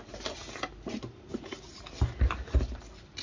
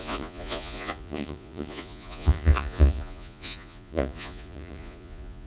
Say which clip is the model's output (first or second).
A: second